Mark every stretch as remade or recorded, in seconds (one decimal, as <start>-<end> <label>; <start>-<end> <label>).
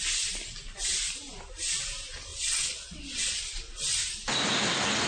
0.0-2.3 recorded; 2.3-3.3 remade; 3.3-5.1 recorded